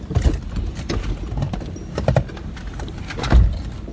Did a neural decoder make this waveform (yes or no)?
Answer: no